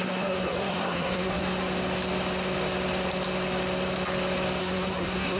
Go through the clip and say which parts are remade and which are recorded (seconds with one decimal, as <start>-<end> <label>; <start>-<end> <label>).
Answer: 0.0-1.4 remade; 1.4-4.6 recorded; 4.6-5.4 remade